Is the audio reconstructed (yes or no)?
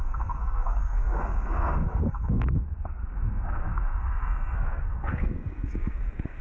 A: yes